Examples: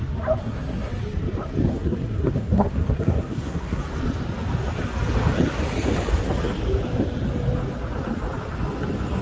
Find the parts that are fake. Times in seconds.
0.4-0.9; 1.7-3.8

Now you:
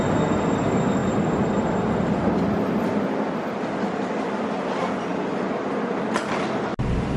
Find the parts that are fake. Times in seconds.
none

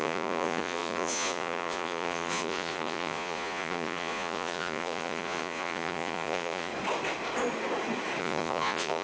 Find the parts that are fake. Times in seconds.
0.0-6.7; 8.2-9.0

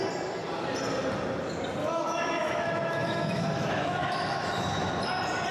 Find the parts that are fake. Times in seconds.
1.8-4.9

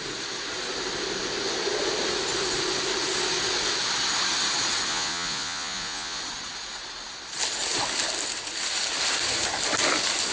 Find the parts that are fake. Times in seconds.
4.9-6.2

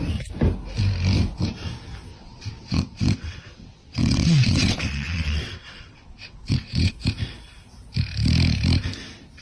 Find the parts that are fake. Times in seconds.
2.1-6.9

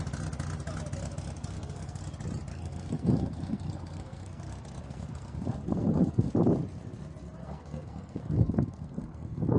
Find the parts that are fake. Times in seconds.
1.4-2.0; 2.5-6.3; 7.4-9.6

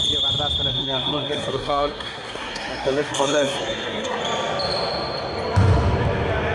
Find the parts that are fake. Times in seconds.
0.7-4.2